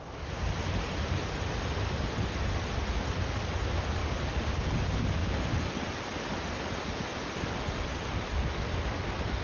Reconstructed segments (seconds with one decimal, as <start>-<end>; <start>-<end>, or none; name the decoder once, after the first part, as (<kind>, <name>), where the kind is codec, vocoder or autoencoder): none